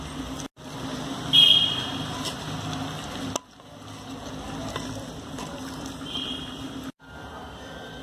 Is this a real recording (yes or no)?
yes